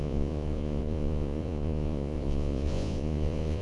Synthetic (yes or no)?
yes